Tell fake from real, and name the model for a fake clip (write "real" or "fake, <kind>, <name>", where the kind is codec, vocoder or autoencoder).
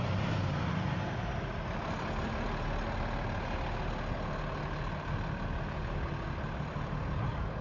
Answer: real